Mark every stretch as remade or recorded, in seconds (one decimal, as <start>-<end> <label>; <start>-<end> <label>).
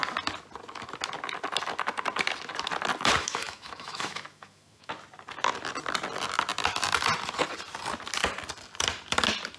0.0-3.2 recorded; 3.2-4.9 remade; 4.9-9.6 recorded